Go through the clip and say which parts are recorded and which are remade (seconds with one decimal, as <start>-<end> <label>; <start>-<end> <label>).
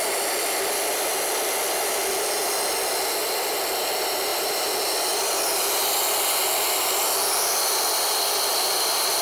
0.0-9.2 recorded